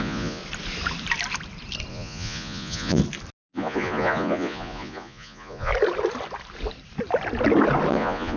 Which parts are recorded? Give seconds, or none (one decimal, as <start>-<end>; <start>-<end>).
0.4-1.9; 3.0-3.5; 5.7-7.9